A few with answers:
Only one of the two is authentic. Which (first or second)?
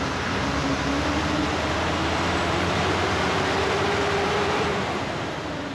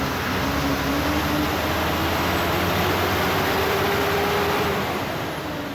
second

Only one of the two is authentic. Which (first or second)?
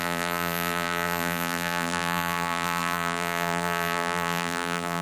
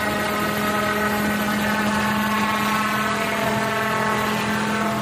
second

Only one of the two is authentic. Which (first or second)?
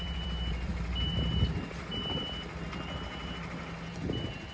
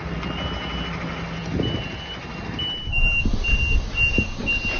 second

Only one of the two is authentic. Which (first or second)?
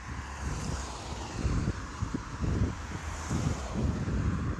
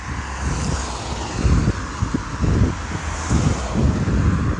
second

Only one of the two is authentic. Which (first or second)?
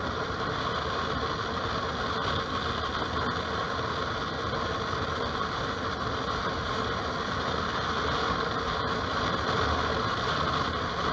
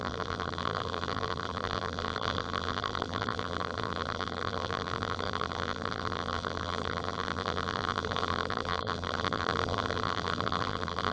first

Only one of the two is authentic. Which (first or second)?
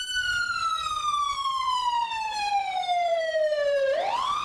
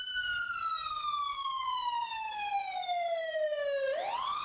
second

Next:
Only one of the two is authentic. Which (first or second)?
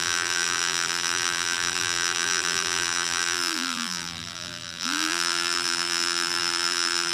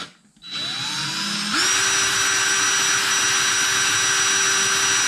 second